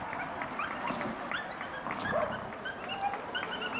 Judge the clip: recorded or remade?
recorded